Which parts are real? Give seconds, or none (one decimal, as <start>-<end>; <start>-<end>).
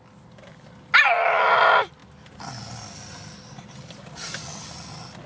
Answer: 0.0-5.3